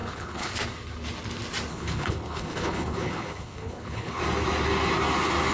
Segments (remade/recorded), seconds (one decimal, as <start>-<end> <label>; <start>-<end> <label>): 0.0-0.5 remade; 0.5-1.7 recorded; 1.7-4.2 remade; 4.2-5.5 recorded